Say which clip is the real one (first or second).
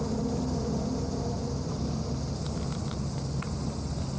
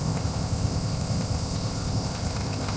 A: first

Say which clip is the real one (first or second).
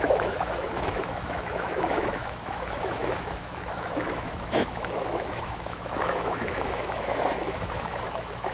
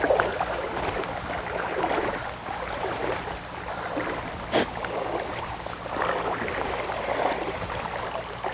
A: second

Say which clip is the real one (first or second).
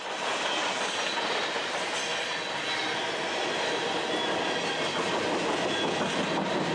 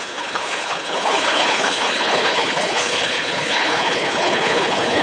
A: first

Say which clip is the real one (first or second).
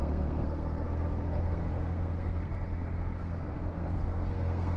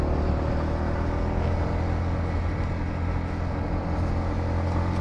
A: second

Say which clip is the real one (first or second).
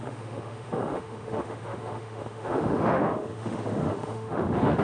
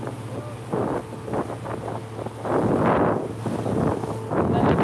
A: second